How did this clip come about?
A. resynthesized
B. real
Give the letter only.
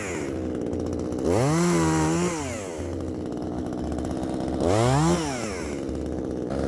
B